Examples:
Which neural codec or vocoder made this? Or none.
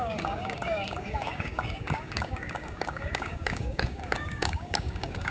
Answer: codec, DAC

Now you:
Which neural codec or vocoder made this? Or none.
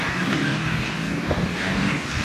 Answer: codec, DAC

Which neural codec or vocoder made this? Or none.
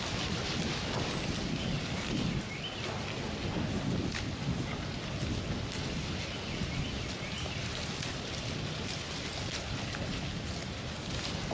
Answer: none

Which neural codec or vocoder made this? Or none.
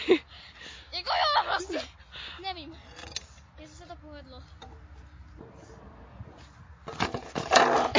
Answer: none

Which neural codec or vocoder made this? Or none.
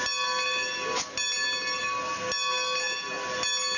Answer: none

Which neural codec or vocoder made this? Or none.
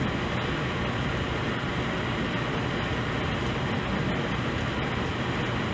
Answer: none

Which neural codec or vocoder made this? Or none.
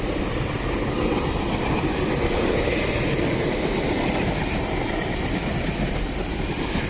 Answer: none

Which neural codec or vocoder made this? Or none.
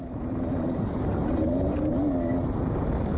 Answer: none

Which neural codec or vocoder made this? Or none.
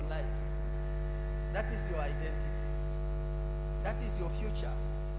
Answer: none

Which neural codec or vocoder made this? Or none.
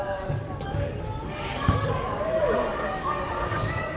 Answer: codec, DAC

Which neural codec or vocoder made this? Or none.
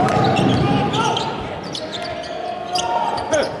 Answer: none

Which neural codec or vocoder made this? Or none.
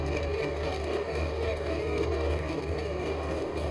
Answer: codec, DAC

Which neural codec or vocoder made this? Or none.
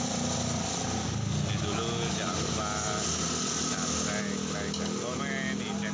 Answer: none